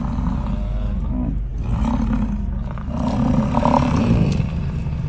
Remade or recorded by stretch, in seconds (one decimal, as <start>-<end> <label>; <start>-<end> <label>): 0.0-4.0 recorded; 4.0-5.1 remade